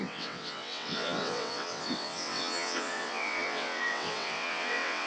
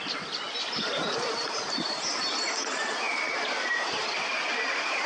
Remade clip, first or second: first